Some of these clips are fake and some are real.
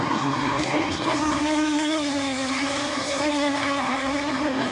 fake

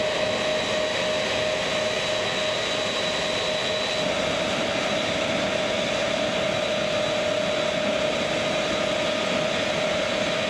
real